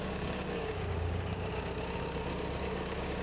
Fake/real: fake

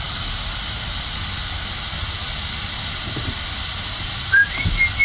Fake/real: real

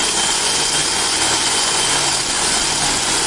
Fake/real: fake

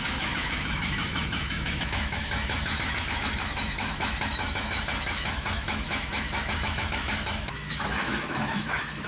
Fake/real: fake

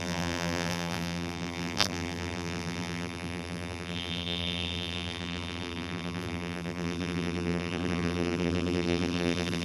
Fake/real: fake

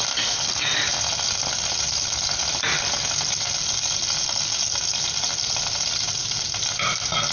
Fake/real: real